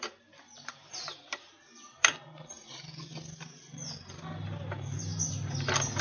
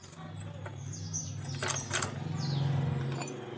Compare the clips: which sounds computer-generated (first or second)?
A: first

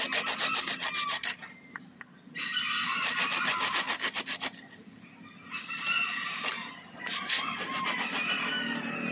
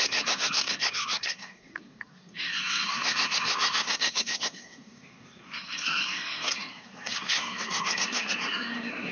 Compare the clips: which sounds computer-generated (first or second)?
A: second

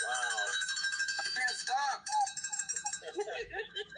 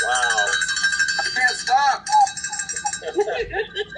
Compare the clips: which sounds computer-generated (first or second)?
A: first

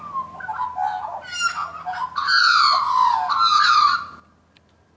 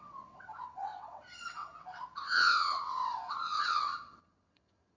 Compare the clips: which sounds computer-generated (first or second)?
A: second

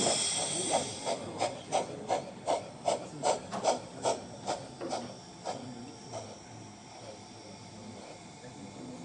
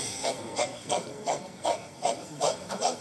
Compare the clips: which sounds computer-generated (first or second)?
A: second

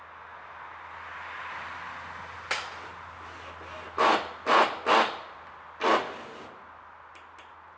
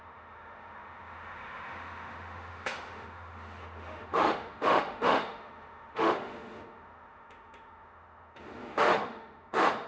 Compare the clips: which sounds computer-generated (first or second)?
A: second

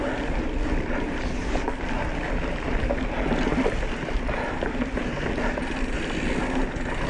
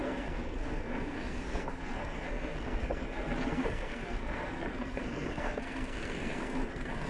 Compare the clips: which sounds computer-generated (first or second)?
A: second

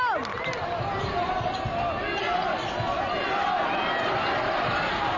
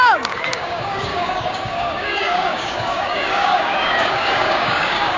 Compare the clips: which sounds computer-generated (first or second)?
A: second